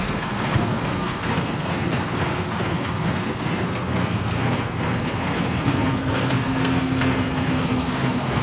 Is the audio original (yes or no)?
no